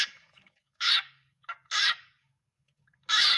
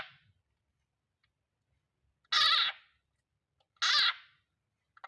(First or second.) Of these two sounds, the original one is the second